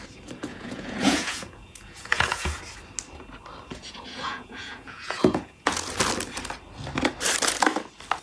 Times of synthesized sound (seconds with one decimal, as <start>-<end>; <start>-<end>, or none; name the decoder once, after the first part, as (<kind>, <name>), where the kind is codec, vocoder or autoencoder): 0.5-2.6 (vocoder, Vocos); 3.7-5.9